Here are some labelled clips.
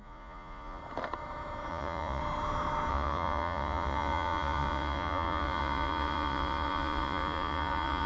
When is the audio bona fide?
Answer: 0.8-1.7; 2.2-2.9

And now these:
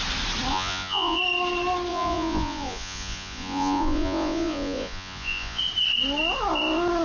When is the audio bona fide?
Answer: 0.0-0.5; 1.2-1.9; 5.6-7.0

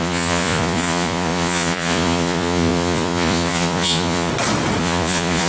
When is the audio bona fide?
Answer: 4.3-4.8

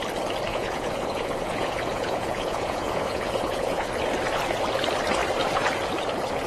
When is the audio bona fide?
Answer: 0.0-0.5; 3.9-6.5